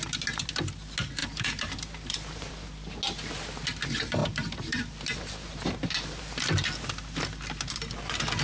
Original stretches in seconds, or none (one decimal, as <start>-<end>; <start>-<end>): 0.0-1.2; 2.5-4.2; 6.2-8.4